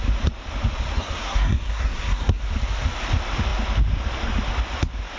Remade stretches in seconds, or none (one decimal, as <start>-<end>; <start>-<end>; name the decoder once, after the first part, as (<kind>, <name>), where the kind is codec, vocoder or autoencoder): 0.9-2.4 (codec, SNAC)

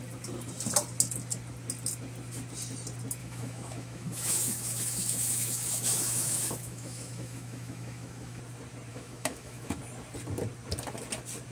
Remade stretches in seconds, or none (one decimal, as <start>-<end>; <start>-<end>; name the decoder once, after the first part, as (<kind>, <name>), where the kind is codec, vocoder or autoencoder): 3.2-8.4 (autoencoder, DAC-VAE); 8.9-9.8

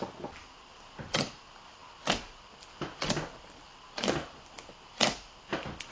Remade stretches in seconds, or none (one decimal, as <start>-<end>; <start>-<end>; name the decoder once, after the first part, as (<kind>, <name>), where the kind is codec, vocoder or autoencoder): 0.0-1.8 (vocoder, BigVGAN v2); 5.3-5.9

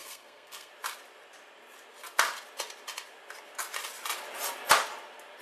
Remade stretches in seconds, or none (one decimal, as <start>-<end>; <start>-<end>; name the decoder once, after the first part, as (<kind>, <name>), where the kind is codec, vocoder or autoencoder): 0.0-0.7 (codec, SNAC)

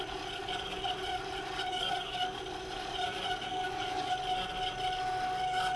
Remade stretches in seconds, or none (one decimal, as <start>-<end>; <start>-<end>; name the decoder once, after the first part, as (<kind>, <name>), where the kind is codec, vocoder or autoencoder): 1.8-2.4 (codec, DAC); 3.5-4.1

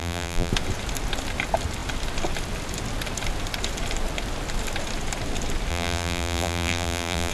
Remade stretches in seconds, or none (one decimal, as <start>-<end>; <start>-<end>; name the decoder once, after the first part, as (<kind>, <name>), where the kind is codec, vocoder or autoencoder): 0.0-0.5 (vocoder, BigVGAN v2); 5.7-7.3

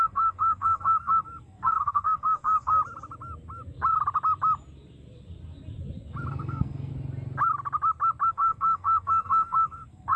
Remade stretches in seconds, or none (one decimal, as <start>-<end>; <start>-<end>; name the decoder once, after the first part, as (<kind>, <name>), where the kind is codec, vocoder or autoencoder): 0.0-2.8 (codec, SNAC); 6.3-6.9; 8.3-10.2

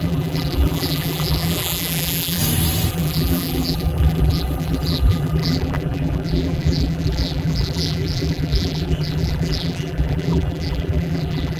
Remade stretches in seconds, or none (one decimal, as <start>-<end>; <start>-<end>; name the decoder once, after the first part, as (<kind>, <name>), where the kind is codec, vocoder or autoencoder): 0.0-2.4 (vocoder, BigVGAN v2); 2.9-11.6